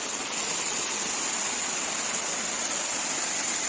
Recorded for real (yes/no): yes